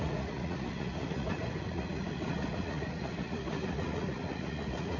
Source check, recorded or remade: remade